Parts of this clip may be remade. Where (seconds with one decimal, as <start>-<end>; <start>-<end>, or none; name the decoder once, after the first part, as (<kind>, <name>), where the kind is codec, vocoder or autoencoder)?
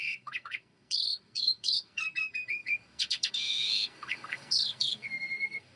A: 0.0-5.8 (codec, SNAC)